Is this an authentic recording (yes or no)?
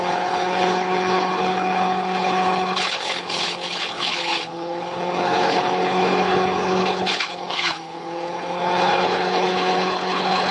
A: no